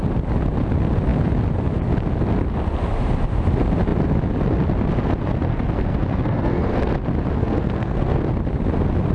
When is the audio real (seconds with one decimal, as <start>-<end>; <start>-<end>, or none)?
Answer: 0.0-5.5; 6.9-7.4; 8.2-9.1